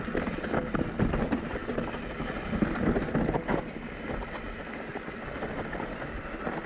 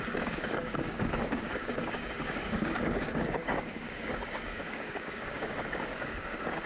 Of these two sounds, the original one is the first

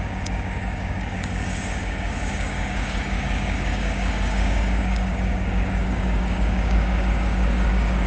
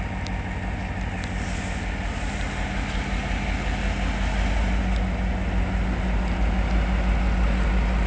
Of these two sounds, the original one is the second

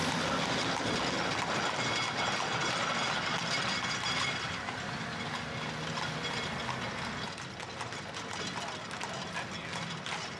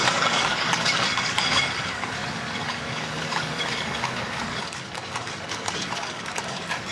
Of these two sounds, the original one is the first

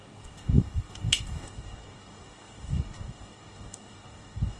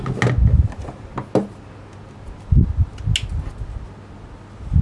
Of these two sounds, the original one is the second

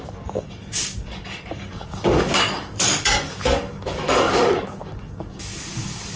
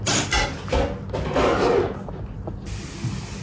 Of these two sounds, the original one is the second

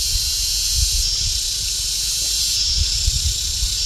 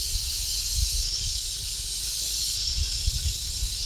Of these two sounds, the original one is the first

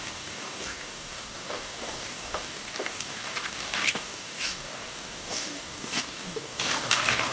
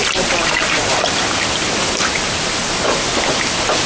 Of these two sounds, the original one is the second